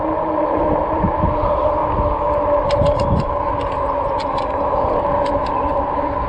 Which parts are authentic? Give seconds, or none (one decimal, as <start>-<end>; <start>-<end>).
1.8-2.6; 4.2-5.2